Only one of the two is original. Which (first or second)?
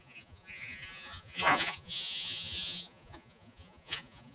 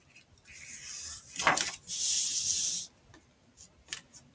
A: second